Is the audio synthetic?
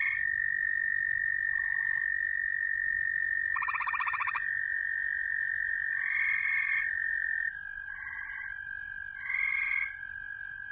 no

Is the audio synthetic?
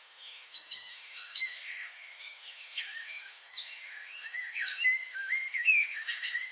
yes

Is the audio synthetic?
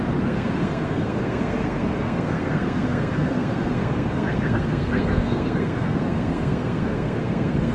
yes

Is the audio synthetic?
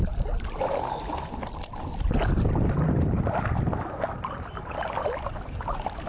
no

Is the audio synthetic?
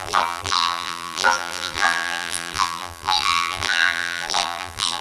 yes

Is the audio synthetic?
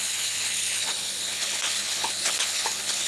yes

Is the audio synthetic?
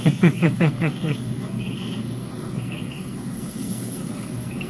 yes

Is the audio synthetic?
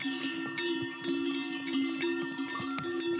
no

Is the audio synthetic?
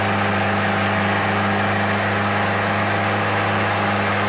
no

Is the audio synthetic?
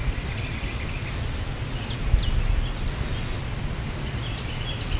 no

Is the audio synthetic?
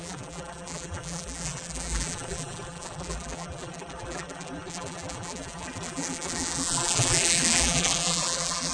yes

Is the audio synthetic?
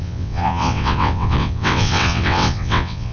yes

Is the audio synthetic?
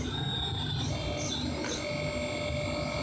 no